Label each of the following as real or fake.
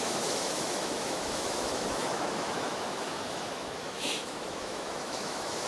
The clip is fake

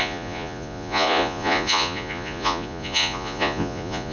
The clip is fake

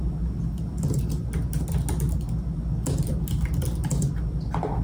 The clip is real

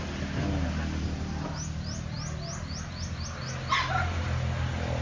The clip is real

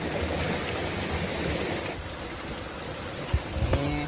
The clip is real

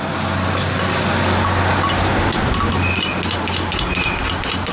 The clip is real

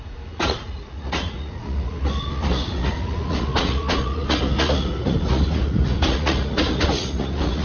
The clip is fake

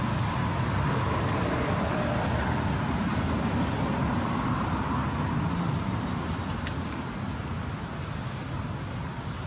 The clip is real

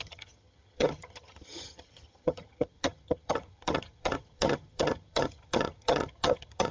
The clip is fake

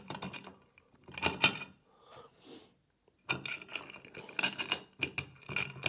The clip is real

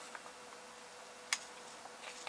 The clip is real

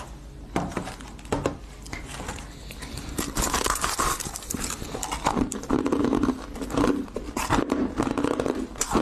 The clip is real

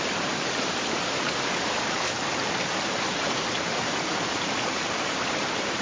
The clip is fake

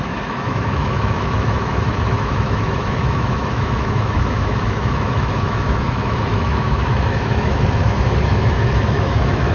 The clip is fake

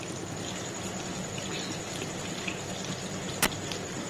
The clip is real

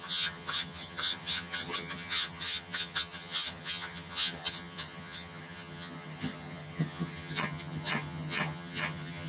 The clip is fake